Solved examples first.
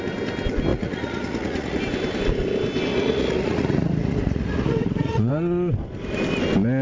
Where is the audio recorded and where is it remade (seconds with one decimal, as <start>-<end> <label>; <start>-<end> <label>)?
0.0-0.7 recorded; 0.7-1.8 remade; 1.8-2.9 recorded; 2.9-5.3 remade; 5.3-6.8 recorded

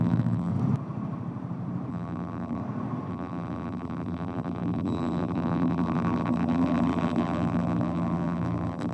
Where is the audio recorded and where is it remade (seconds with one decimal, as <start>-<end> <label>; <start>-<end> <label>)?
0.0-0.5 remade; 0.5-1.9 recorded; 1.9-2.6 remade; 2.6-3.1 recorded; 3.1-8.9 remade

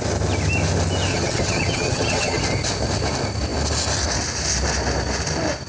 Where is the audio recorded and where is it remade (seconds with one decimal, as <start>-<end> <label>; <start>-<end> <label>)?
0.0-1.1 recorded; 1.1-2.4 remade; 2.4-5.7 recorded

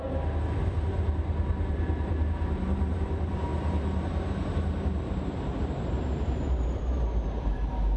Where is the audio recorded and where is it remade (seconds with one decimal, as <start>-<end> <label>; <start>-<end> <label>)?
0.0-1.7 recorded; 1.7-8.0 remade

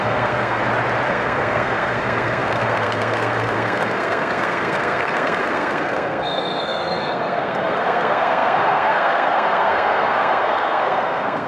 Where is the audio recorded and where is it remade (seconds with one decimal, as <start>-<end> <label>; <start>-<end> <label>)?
0.0-0.6 remade; 0.6-1.1 recorded; 1.1-11.5 remade

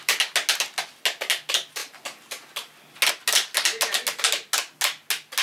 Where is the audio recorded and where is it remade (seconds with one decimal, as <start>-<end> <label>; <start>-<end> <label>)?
0.0-5.4 recorded

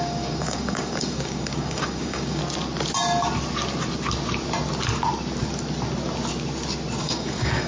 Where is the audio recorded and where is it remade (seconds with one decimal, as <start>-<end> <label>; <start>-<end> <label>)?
0.0-2.4 remade; 2.4-7.0 recorded; 7.0-7.7 remade

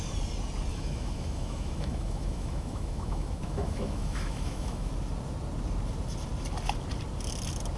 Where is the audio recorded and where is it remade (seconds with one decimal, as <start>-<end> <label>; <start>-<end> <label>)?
0.0-0.7 recorded; 0.7-4.9 remade; 4.9-7.8 recorded